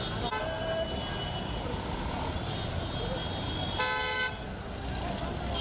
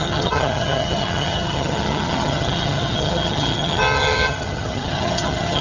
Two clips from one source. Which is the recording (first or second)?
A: first